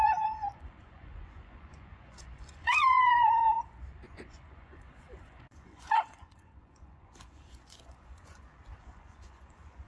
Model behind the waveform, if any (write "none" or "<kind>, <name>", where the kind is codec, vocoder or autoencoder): vocoder, Vocos